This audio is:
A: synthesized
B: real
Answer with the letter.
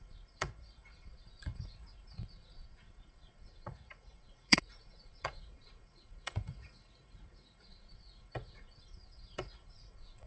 A